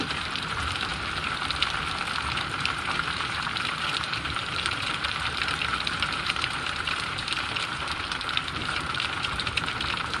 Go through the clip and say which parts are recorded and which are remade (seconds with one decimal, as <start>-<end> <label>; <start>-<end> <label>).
0.0-0.9 remade; 0.9-2.2 recorded; 2.2-10.2 remade